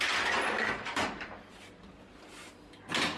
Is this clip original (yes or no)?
yes